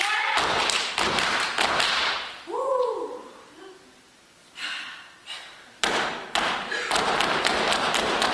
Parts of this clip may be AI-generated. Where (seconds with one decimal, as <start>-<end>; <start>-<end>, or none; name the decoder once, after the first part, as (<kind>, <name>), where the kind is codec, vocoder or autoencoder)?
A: 1.5-3.6 (vocoder, BigVGAN v2); 5.2-7.5